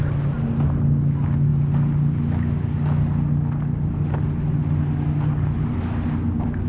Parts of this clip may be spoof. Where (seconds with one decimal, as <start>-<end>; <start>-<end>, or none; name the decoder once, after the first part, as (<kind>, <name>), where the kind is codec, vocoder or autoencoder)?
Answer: none